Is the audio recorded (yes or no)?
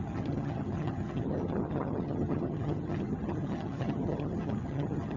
no